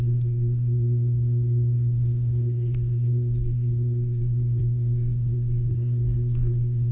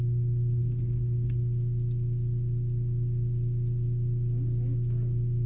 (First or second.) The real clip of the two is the second